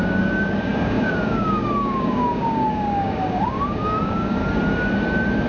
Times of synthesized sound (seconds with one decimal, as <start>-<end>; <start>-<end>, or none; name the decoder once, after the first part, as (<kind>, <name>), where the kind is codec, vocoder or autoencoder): 0.0-4.4 (codec, DAC)